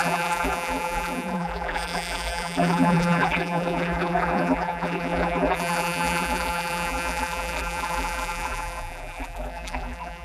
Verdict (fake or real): fake